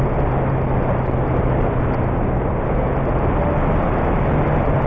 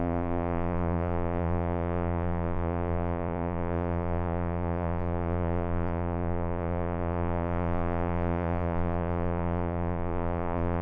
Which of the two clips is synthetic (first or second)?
second